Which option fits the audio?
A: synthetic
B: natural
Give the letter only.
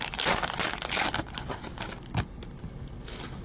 B